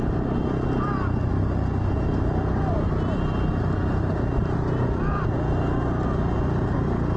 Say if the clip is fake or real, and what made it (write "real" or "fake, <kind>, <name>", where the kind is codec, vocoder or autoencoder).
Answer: real